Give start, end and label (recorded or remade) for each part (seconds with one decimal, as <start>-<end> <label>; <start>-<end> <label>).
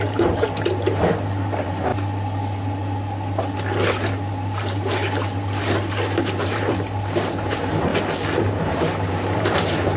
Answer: 0.0-1.9 remade; 1.9-6.2 recorded; 6.2-7.9 remade; 7.9-8.6 recorded; 8.6-10.0 remade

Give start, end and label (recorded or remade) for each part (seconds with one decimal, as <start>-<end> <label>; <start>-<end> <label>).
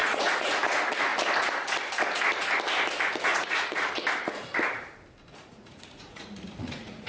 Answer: 0.0-0.6 remade; 0.6-3.3 recorded; 3.3-3.9 remade; 3.9-5.5 recorded; 5.5-7.1 remade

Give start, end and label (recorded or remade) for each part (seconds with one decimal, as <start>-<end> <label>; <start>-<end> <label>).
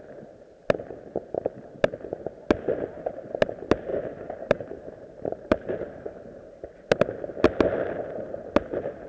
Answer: 0.0-3.9 recorded; 3.9-6.7 remade; 6.7-9.1 recorded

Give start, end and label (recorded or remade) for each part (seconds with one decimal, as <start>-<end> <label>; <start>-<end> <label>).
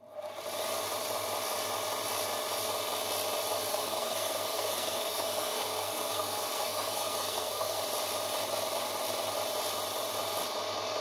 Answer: 0.0-3.7 recorded; 3.7-7.8 remade; 7.8-11.0 recorded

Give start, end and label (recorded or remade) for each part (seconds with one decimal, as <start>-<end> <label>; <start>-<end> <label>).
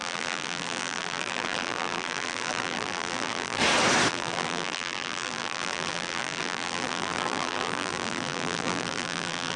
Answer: 0.0-3.6 remade; 3.6-4.1 recorded; 4.1-9.6 remade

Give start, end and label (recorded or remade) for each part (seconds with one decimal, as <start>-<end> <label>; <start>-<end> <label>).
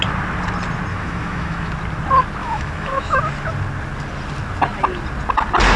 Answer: 0.0-0.9 recorded; 0.9-1.7 remade; 1.7-2.4 recorded; 2.4-3.2 remade; 3.2-5.8 recorded